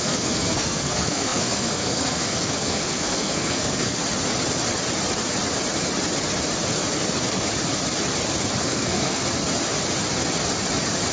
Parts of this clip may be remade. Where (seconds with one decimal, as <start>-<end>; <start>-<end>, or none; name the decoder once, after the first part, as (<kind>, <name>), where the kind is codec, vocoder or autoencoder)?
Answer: 0.0-4.0 (codec, SNAC); 8.6-9.2